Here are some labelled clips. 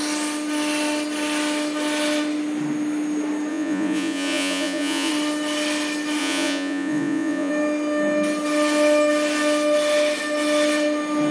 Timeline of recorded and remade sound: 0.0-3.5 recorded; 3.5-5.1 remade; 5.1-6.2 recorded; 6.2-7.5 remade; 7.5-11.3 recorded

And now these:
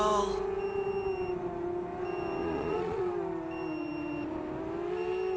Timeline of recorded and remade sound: 0.0-2.4 recorded; 2.4-3.1 remade; 3.1-5.4 recorded

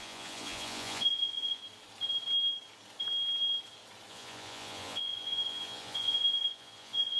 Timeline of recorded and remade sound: 0.0-1.6 remade; 1.6-4.1 recorded; 4.1-7.2 remade

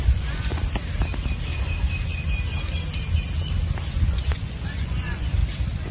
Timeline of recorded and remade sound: 0.0-0.6 remade; 0.6-4.1 recorded; 4.1-5.4 remade; 5.4-5.9 recorded

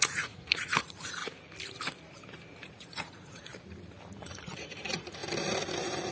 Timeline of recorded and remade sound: 0.0-1.2 remade; 1.2-2.5 recorded; 2.5-3.5 remade; 3.5-4.2 recorded; 4.2-5.2 remade; 5.2-6.1 recorded

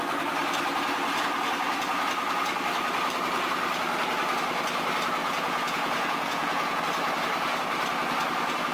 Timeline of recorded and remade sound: 0.0-5.2 recorded; 5.2-6.8 remade; 6.8-8.7 recorded